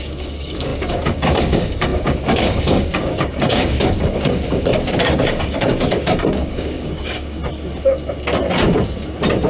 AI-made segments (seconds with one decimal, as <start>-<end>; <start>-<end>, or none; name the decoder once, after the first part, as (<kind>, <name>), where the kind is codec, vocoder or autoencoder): 0.0-7.4 (codec, DAC)